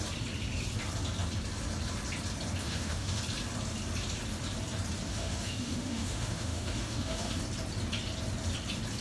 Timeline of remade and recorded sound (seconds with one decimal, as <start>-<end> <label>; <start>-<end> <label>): 0.0-2.6 recorded; 2.6-3.2 remade; 3.2-5.1 recorded; 5.1-7.4 remade; 7.4-9.0 recorded